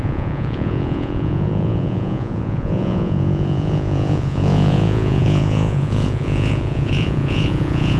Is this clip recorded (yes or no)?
no